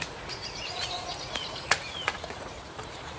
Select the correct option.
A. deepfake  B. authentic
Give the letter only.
A